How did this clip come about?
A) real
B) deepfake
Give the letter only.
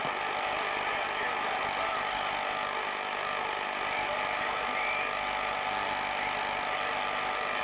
A